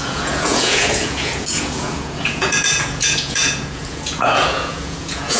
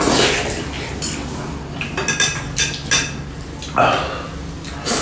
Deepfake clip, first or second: first